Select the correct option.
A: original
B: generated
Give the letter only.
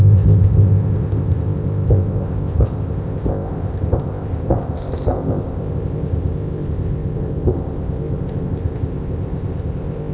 B